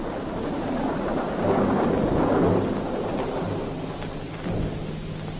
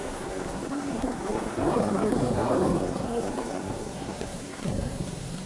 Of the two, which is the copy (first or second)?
second